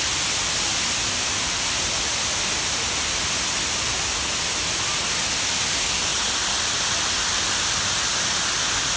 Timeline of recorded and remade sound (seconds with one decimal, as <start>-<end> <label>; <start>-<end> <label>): 0.0-9.0 recorded